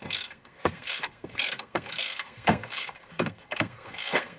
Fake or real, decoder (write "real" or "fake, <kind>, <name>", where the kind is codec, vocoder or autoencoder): fake, codec, SNAC